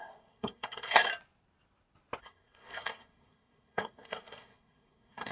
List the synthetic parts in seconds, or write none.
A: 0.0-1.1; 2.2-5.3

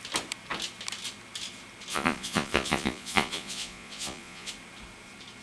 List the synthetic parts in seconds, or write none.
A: 1.9-4.5

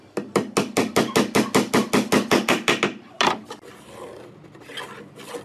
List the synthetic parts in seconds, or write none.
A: none

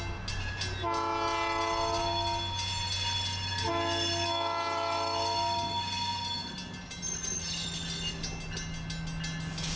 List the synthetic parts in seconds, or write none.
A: none

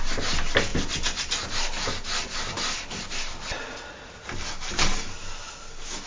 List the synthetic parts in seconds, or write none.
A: none

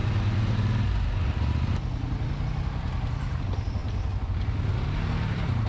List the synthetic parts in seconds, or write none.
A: none